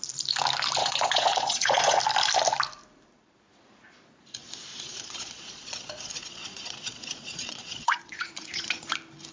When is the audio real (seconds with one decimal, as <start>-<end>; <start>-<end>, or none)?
0.0-0.8; 2.0-4.7; 8.9-9.3